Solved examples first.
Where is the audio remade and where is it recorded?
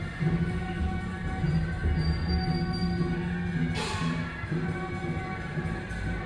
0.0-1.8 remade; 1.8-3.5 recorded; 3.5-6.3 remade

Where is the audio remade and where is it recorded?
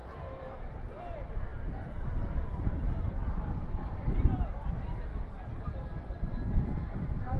0.0-1.0 recorded; 1.0-5.1 remade; 5.1-6.9 recorded; 6.9-7.4 remade